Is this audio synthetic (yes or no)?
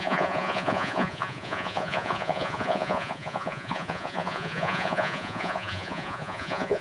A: yes